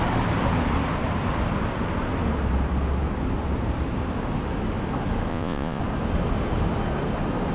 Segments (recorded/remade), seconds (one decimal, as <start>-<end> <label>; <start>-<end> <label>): 0.0-5.3 recorded; 5.3-5.8 remade; 5.8-7.5 recorded